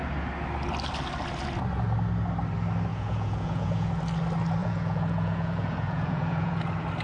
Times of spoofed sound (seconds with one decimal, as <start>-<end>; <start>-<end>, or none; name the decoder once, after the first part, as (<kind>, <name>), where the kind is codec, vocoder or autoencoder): 2.9-3.9 (vocoder, Vocos); 4.6-6.6